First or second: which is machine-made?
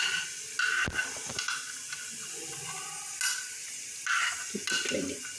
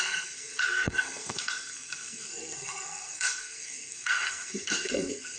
second